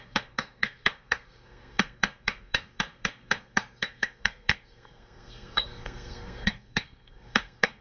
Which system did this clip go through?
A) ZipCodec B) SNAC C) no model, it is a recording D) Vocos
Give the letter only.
B